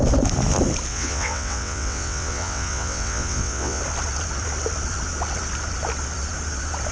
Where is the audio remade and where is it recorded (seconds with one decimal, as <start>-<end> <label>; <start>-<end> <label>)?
0.0-0.9 recorded; 0.9-3.8 remade; 3.8-6.9 recorded